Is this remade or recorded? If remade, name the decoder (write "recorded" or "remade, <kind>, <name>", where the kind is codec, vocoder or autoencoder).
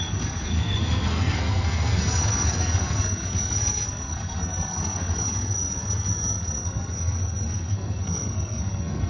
remade, codec, SNAC